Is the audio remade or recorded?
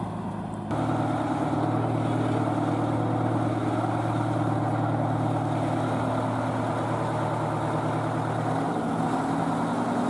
recorded